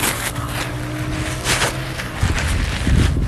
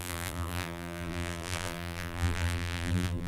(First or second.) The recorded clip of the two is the first